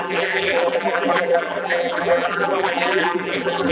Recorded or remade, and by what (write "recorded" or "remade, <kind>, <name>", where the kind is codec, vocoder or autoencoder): remade, vocoder, BigVGAN v2